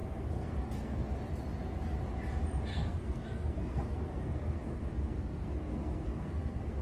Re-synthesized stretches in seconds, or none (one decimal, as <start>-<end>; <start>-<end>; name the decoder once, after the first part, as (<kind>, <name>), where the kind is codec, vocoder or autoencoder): 0.0-1.2 (codec, SNAC); 2.7-6.8

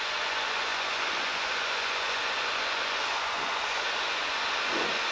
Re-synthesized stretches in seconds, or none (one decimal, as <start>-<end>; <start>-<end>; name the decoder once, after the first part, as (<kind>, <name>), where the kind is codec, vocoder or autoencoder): 0.0-5.1 (vocoder, Vocos)

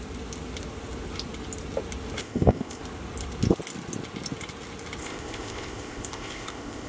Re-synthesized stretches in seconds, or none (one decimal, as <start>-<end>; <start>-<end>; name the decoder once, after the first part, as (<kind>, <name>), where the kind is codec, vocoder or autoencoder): 2.2-2.8 (codec, ZipCodec); 5.0-6.9

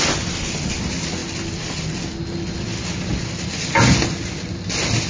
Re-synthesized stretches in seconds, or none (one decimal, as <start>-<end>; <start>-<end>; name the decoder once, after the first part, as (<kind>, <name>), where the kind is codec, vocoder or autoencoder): none

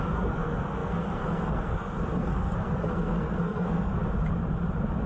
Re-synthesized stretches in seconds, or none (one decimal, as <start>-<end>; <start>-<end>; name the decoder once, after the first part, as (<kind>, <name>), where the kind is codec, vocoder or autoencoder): 0.0-4.0 (codec, SNAC)